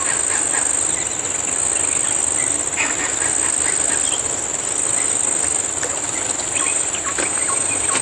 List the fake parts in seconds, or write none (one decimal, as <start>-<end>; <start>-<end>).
6.7-8.0